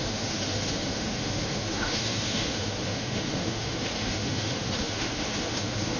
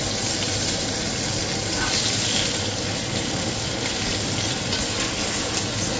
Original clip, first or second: second